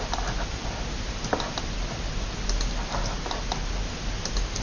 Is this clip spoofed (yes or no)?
no